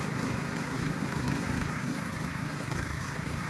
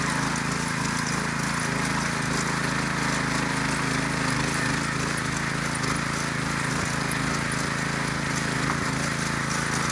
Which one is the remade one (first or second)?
first